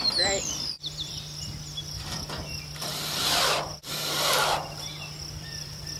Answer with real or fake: fake